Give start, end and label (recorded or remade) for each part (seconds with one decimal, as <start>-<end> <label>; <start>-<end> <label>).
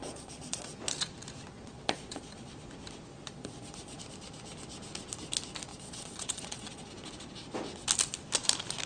0.0-0.8 remade; 0.8-1.5 recorded; 1.5-2.5 remade; 2.5-3.1 recorded; 3.1-4.0 remade; 4.0-5.7 recorded; 5.7-6.9 remade; 6.9-8.9 recorded